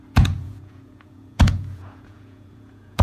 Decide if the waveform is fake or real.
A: fake